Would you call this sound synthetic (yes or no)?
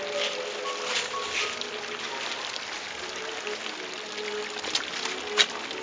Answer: no